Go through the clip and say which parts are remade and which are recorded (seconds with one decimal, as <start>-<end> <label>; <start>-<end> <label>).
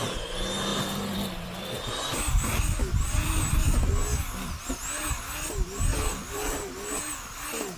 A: 0.0-0.7 recorded; 0.7-3.5 remade; 3.5-6.1 recorded; 6.1-6.6 remade; 6.6-7.8 recorded